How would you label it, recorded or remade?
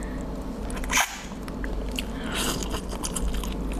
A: recorded